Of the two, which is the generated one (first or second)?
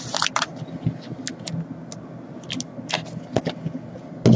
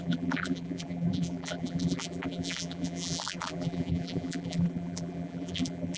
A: second